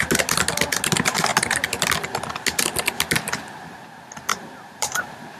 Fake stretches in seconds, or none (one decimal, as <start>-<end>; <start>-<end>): 4.3-5.4